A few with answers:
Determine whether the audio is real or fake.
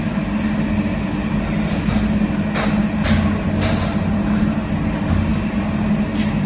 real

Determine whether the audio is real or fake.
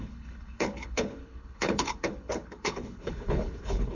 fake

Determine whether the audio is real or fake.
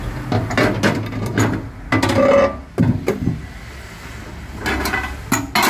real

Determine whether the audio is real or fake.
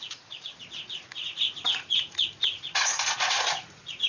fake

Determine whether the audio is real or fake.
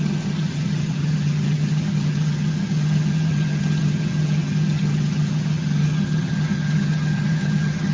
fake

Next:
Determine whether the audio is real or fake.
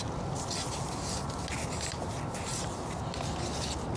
real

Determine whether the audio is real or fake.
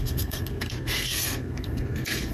fake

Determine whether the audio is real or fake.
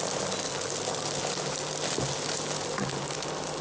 real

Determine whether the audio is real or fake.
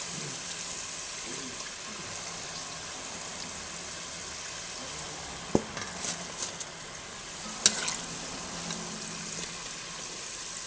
real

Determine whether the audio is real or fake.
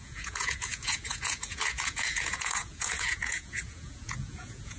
fake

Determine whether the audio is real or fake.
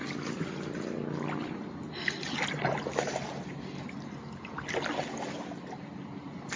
real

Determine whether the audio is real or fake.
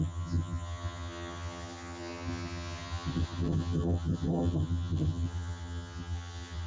fake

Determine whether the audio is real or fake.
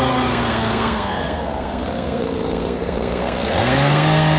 fake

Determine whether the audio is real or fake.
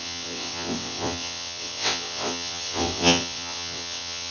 fake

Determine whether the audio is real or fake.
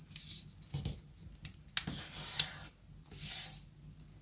real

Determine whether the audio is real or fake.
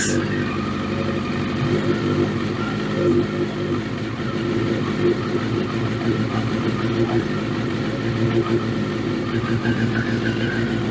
real